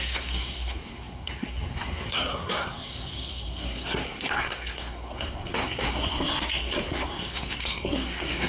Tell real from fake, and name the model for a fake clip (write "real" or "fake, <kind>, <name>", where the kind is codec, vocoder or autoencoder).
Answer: fake, codec, SNAC